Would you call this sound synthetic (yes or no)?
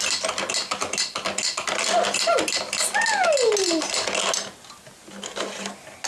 no